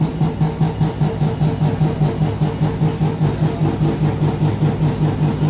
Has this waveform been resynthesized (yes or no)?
no